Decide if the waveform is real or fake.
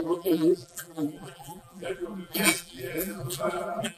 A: fake